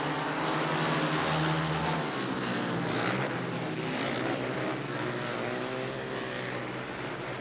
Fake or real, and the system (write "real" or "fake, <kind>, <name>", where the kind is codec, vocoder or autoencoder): real